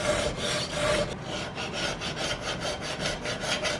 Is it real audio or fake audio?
real